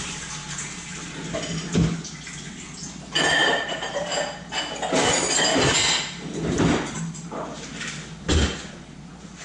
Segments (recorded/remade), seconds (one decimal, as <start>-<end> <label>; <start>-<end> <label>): 0.0-3.4 recorded; 3.4-4.2 remade; 4.2-9.4 recorded